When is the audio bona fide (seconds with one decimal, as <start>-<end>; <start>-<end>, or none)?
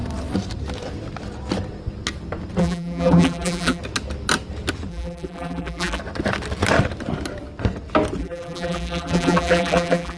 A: 0.0-2.6; 3.8-4.9; 6.0-8.2